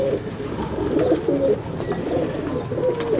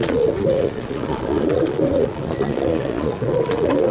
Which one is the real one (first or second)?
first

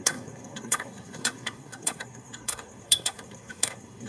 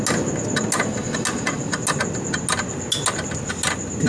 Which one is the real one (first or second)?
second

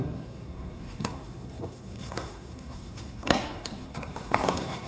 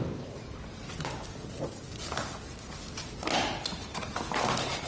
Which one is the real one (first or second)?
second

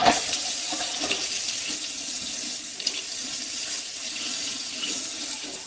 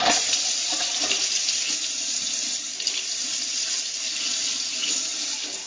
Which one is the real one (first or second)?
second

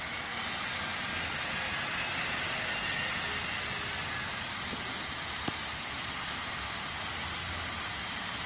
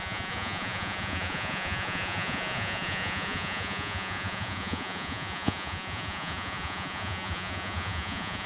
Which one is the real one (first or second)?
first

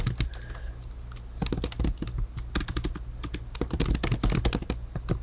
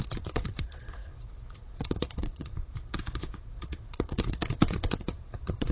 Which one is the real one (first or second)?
first